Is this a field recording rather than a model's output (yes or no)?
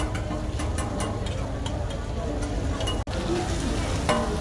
yes